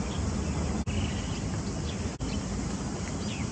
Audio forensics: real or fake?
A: real